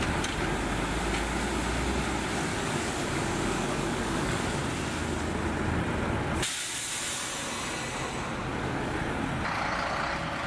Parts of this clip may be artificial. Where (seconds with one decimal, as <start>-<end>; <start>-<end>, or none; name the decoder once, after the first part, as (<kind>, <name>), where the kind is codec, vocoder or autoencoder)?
2.5-4.6 (codec, DAC); 8.4-9.2